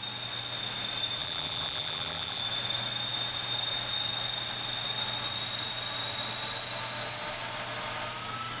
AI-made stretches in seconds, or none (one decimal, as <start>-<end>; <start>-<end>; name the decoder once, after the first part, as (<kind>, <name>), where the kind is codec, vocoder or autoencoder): 1.2-2.4 (vocoder, BigVGAN v2)

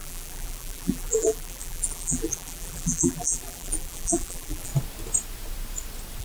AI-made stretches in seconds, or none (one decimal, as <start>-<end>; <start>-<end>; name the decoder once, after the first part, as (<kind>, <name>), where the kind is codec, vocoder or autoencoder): 0.0-4.7 (vocoder, BigVGAN v2)

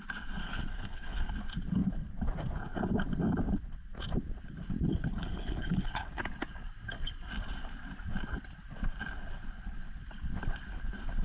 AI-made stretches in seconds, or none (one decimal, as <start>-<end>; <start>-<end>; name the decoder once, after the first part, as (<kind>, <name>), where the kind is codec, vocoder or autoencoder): 0.4-1.3 (codec, HILCodec); 5.1-6.2

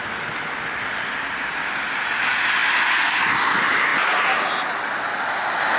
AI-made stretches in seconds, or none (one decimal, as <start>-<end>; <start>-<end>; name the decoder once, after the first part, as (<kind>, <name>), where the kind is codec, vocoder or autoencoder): none

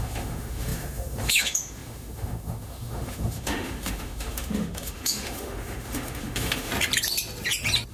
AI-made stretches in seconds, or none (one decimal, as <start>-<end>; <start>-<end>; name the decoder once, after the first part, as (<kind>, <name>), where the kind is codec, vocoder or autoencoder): 0.0-6.7 (autoencoder, DAC-VAE)

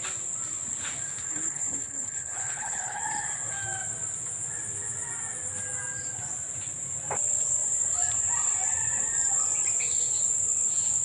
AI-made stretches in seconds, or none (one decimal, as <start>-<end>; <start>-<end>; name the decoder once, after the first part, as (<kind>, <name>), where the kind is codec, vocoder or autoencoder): 1.2-3.0 (codec, HILCodec)

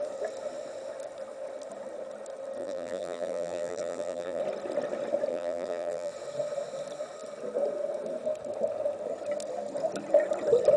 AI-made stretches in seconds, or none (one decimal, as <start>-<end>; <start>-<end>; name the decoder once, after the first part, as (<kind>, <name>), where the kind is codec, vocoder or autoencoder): 2.6-4.4 (vocoder, BigVGAN v2); 5.3-6.1

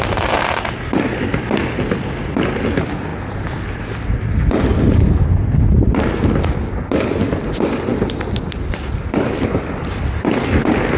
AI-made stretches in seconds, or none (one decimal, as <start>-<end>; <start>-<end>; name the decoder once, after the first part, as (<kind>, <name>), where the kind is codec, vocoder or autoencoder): none